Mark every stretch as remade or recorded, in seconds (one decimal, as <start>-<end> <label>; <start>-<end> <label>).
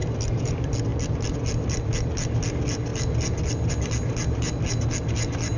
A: 0.0-5.6 recorded